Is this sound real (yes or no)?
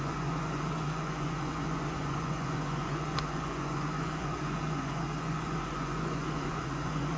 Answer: no